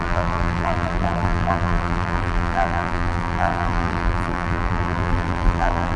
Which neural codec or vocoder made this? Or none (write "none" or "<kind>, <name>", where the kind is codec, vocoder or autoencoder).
vocoder, BigVGAN v2